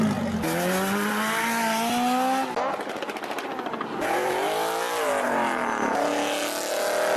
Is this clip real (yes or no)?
yes